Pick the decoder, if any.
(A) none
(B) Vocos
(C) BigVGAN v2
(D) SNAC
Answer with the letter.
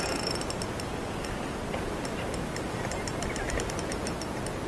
A